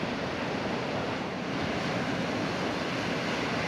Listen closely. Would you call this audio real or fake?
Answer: real